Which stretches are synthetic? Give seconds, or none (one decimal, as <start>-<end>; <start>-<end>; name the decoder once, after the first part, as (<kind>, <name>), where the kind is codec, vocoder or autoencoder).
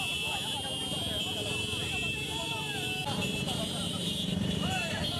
1.8-2.6 (vocoder, BigVGAN v2); 3.0-5.2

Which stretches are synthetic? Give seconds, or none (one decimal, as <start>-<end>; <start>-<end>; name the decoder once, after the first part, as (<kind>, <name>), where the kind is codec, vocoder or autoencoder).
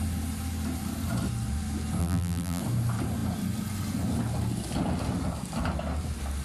2.0-2.6 (vocoder, BigVGAN v2)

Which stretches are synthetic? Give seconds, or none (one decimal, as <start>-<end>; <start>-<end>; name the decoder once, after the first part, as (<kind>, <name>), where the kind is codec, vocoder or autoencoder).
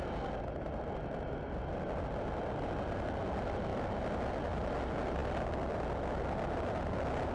none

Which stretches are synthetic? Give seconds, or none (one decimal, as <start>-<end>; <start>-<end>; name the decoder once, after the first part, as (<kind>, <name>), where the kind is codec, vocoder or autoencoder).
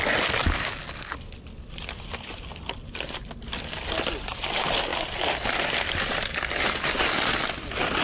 none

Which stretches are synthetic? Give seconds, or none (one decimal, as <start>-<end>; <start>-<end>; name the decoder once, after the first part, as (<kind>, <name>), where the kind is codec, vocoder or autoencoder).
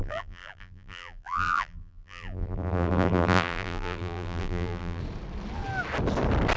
0.0-5.0 (vocoder, BigVGAN v2)